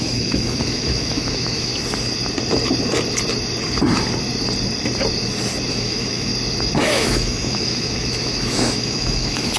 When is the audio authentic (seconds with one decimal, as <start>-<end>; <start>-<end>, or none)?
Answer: 1.7-5.7; 6.3-6.8